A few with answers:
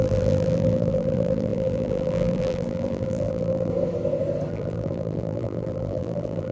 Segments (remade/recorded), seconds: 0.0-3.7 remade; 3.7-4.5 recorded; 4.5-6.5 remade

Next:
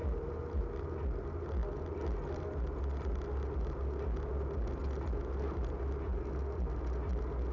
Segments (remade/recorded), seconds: 0.0-0.6 remade; 0.6-7.5 recorded

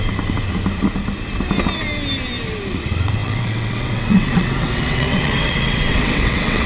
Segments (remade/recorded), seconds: 0.0-2.7 recorded; 2.7-6.7 remade

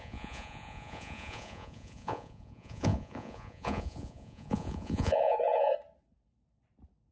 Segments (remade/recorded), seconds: 0.0-5.7 remade; 5.7-7.1 recorded

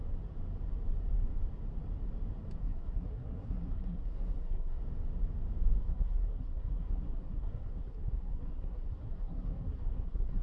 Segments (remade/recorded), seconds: 0.0-2.6 recorded; 2.6-4.8 remade; 4.8-5.8 recorded; 5.8-10.4 remade

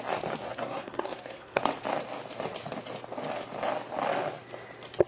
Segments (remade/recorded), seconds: 0.0-0.5 recorded; 0.5-1.6 remade; 1.6-5.1 recorded

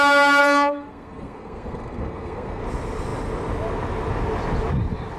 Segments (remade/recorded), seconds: 0.0-0.4 recorded; 0.4-2.6 remade; 2.6-5.2 recorded

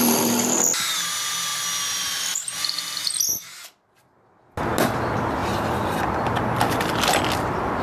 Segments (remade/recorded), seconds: 0.0-7.8 recorded